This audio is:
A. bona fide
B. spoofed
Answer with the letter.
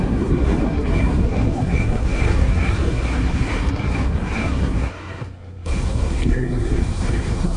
B